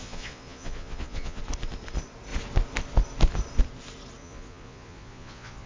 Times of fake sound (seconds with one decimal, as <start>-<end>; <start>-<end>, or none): 0.0-1.4; 4.2-5.7